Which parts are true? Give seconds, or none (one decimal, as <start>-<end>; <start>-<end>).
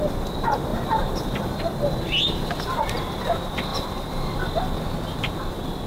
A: 0.0-5.9